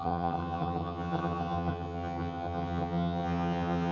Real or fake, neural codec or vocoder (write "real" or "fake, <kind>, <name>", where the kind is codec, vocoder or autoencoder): fake, vocoder, HiFi-GAN